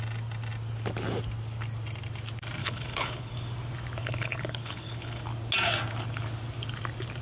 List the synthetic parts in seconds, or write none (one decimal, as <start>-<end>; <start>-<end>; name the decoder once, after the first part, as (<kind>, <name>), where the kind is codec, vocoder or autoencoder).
2.6-3.3 (codec, HILCodec); 4.0-5.2